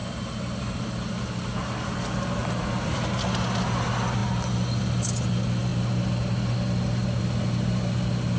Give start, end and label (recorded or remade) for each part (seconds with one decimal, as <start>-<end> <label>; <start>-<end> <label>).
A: 0.0-0.8 remade; 0.8-2.4 recorded; 2.4-3.2 remade; 3.2-8.4 recorded